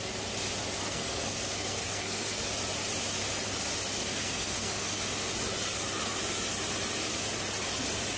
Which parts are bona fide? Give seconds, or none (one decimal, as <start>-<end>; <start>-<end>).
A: 0.0-0.8; 2.4-4.0; 5.3-8.2